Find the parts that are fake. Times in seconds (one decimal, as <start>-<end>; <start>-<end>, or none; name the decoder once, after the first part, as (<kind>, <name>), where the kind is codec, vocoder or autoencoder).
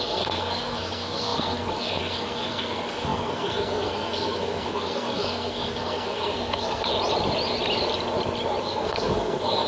0.0-6.9 (codec, SNAC); 8.6-9.7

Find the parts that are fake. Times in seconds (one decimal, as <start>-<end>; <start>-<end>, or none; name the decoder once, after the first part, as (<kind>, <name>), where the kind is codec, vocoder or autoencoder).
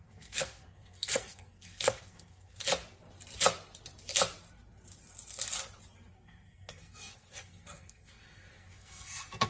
0.0-2.6 (codec, SNAC); 6.1-9.5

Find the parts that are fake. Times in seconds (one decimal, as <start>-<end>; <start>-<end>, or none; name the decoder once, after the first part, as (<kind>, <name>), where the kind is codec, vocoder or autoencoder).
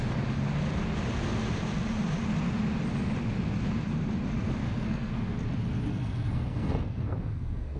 4.6-5.1 (codec, SNAC); 5.9-7.8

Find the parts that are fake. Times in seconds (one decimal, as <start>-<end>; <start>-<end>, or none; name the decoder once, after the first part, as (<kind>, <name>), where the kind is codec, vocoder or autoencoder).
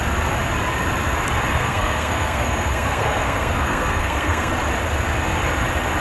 1.5-4.5 (codec, SNAC)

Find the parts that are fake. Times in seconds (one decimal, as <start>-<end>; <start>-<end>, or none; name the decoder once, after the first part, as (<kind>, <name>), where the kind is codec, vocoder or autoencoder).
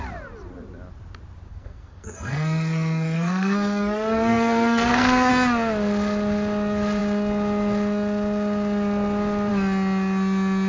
1.5-5.3 (codec, SNAC)